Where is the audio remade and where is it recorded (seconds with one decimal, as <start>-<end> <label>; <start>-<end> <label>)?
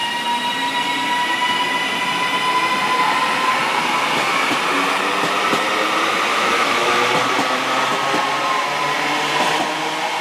0.0-6.3 recorded; 6.3-7.0 remade; 7.0-10.2 recorded